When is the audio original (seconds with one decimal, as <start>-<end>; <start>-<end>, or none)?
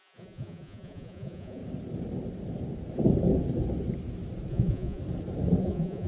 1.6-4.5; 5.0-5.6